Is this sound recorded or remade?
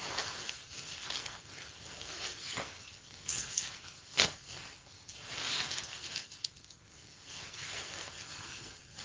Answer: remade